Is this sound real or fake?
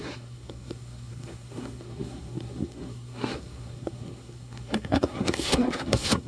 fake